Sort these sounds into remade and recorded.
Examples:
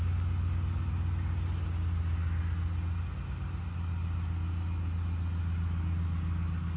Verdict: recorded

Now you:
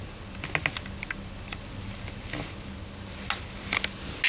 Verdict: recorded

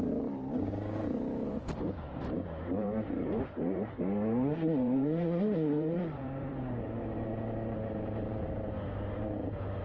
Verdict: remade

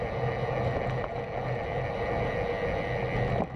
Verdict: recorded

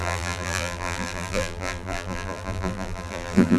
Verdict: remade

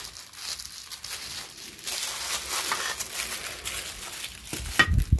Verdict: recorded